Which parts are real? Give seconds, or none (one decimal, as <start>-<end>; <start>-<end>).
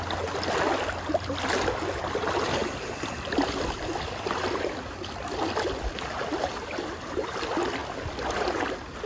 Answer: 0.0-2.6; 5.4-9.1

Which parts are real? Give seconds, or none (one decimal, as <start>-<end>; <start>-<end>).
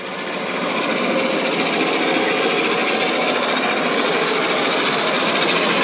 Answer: 0.0-5.8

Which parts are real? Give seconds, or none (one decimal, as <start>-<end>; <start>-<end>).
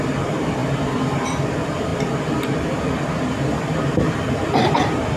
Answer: none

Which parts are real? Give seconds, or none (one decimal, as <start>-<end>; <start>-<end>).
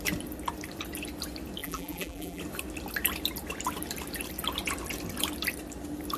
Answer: 0.0-1.6; 2.4-6.2